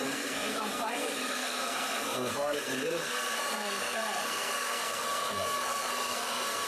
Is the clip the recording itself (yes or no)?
no